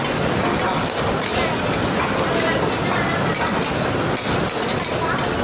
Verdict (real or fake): real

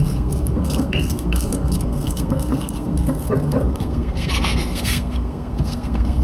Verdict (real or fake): fake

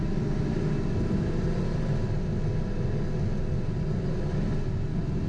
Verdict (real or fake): real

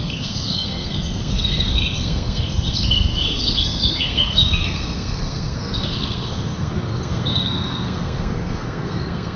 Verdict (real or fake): fake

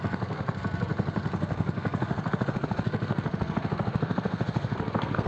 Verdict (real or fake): fake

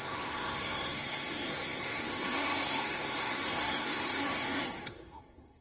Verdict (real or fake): fake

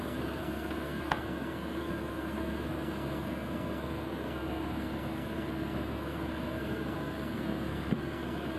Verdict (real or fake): fake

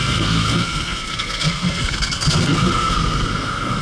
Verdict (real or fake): fake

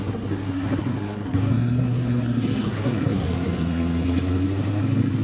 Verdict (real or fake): fake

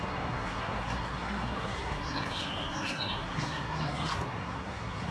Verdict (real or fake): fake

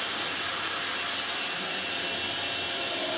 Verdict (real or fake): real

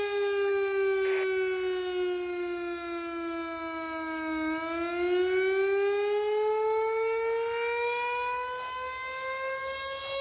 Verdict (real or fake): real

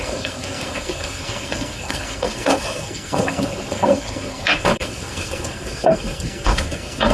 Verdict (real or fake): fake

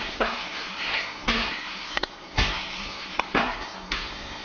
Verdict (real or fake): fake